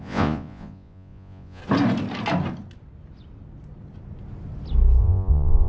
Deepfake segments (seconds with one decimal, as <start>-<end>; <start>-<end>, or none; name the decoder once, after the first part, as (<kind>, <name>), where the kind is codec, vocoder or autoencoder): 0.0-1.6 (vocoder, Vocos); 5.0-5.7